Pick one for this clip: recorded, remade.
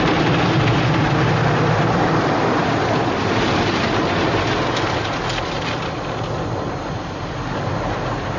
recorded